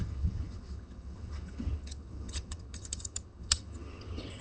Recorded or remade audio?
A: remade